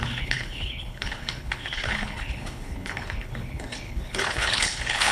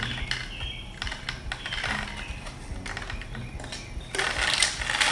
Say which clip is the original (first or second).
second